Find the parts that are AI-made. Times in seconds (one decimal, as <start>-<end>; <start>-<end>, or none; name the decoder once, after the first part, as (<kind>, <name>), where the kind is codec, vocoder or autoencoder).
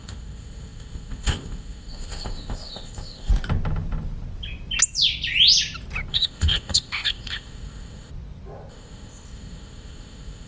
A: 0.0-3.3 (codec, ZipCodec); 6.1-8.1; 8.7-10.5